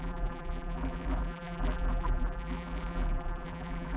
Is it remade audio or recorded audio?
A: remade